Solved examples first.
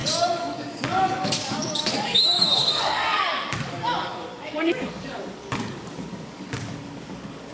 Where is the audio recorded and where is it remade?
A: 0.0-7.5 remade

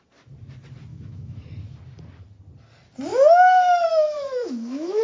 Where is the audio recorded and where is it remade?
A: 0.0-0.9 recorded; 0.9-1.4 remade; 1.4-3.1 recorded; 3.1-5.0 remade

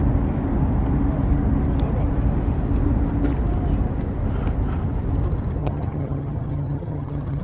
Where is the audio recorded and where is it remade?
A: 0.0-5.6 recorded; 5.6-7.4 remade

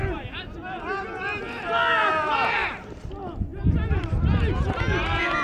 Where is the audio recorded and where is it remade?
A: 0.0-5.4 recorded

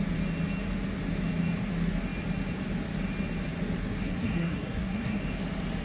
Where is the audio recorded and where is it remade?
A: 0.0-3.8 recorded; 3.8-5.2 remade; 5.2-5.8 recorded

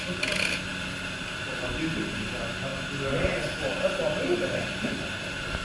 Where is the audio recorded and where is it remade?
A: 0.0-5.6 recorded